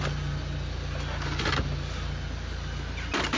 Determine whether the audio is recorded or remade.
recorded